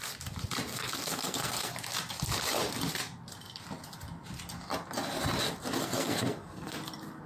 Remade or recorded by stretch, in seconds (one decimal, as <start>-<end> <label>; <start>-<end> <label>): 0.0-0.7 recorded; 0.7-1.7 remade; 1.7-5.8 recorded; 5.8-6.8 remade; 6.8-7.3 recorded